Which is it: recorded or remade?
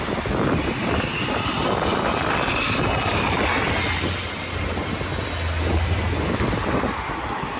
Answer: recorded